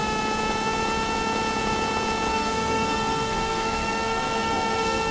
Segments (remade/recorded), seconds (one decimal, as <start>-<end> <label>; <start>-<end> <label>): 0.0-2.3 recorded; 2.3-5.1 remade